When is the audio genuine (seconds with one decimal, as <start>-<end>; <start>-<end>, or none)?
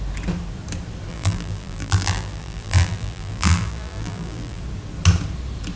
0.0-1.1; 4.6-5.8